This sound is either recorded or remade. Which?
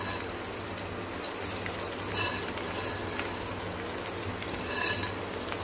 recorded